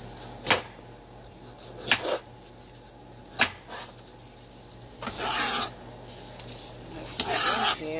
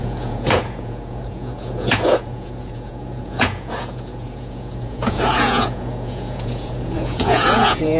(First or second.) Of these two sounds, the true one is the first